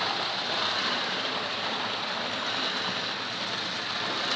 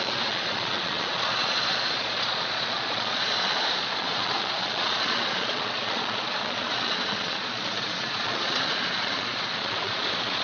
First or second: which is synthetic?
second